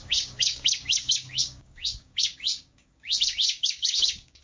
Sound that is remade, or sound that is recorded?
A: remade